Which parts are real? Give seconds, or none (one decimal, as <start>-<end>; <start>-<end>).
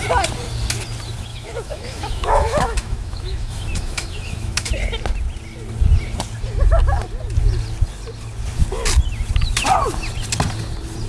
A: 0.0-1.3; 4.7-11.1